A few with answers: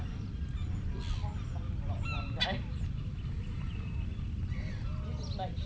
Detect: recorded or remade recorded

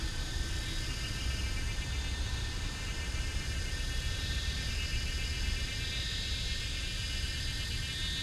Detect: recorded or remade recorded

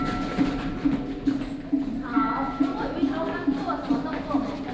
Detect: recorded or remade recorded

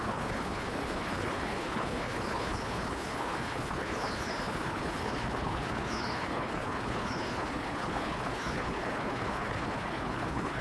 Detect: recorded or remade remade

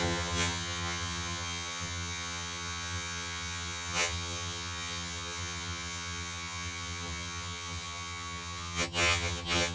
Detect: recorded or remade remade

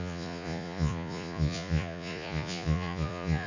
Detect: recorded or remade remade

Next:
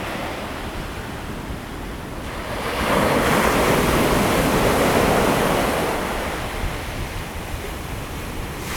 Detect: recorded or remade recorded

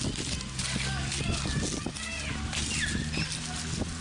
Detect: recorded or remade recorded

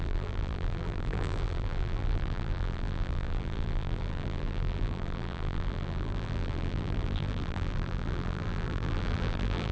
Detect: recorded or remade remade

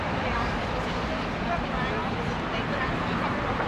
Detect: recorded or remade remade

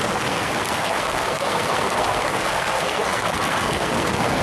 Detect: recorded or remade remade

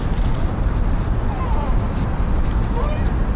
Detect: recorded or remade recorded